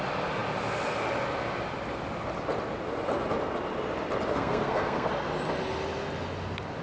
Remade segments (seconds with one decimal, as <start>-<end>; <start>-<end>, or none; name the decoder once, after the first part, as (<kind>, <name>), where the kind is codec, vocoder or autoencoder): 4.3-5.1 (codec, SNAC)